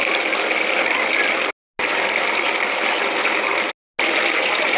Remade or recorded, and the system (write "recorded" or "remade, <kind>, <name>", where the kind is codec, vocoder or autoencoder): recorded